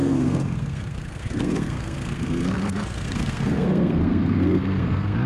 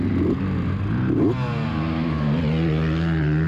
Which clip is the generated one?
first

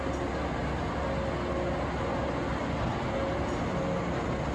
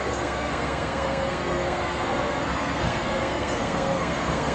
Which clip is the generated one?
second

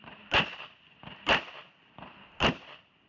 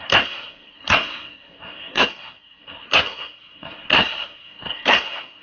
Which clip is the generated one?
second